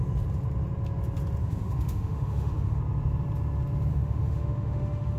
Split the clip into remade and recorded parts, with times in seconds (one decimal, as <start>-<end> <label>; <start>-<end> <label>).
0.0-1.4 recorded; 1.4-2.8 remade; 2.8-3.9 recorded; 3.9-5.2 remade